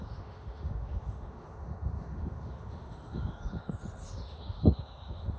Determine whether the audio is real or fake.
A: fake